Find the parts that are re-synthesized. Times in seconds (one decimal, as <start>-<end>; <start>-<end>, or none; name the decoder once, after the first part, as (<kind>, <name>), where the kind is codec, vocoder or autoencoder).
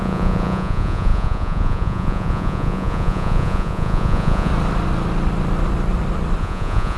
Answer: 0.0-4.5 (vocoder, Vocos); 6.4-7.0